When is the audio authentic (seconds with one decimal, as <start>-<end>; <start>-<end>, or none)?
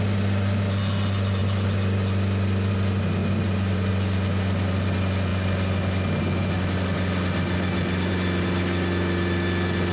0.0-9.9